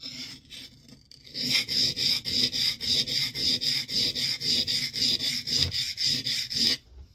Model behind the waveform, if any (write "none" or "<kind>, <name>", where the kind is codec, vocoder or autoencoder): none